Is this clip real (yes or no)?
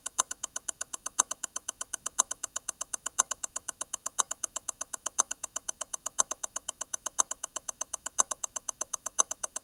no